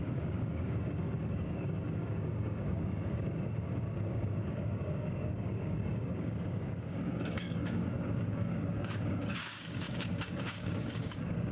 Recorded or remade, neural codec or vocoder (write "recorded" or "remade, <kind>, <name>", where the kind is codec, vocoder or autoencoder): remade, codec, DAC